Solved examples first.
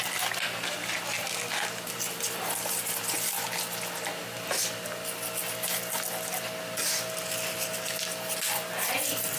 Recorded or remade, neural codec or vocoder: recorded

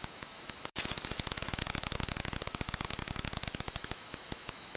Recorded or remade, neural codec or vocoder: remade, autoencoder, DAC-VAE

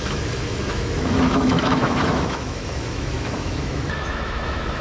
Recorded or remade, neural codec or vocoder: remade, autoencoder, DAC-VAE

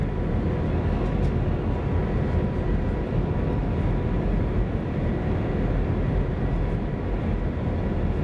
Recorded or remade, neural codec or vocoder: recorded